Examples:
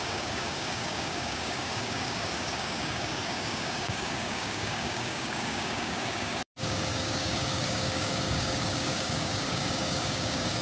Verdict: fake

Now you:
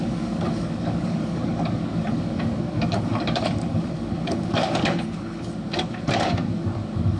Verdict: fake